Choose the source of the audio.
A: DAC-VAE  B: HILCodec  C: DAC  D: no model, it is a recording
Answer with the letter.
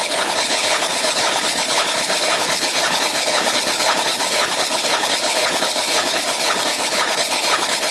B